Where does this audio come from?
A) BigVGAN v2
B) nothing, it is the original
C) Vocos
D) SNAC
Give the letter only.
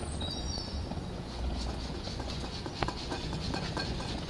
C